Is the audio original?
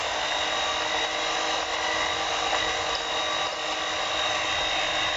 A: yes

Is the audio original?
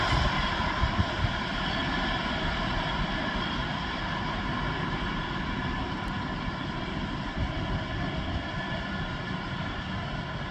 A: no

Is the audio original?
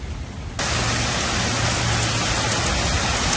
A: yes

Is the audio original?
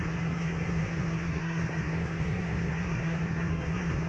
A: no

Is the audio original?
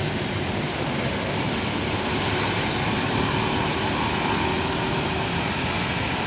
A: yes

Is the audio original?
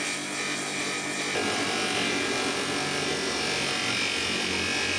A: yes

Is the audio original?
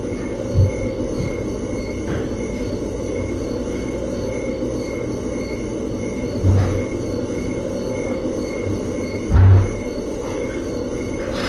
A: yes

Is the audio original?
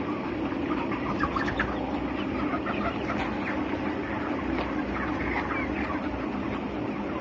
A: yes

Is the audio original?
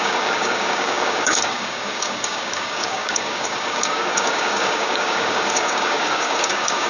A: no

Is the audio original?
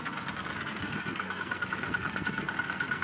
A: no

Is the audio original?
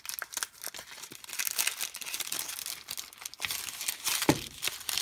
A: yes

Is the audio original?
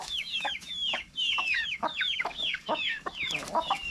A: no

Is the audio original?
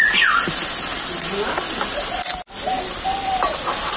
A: yes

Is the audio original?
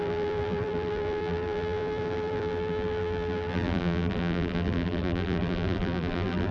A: no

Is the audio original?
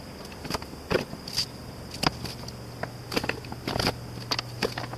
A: yes